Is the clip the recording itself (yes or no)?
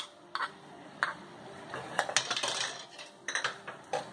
yes